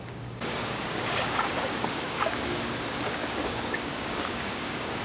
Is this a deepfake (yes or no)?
yes